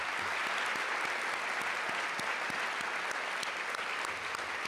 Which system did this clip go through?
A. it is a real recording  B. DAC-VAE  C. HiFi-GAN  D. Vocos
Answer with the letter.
A